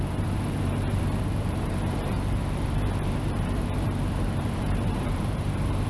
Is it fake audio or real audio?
fake